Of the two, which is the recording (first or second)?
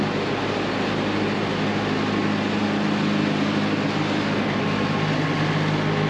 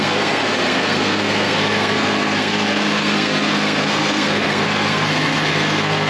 first